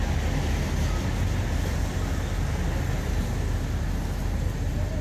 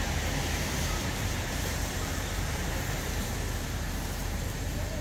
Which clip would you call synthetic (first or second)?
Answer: second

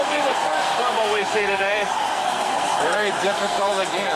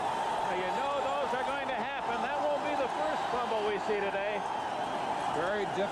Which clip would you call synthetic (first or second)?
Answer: first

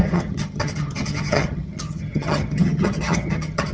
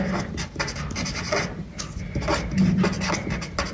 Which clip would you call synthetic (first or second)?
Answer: first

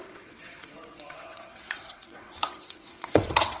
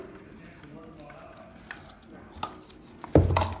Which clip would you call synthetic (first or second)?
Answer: first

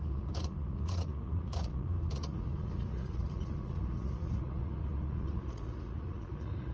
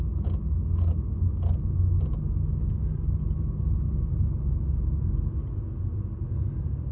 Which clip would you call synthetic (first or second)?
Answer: first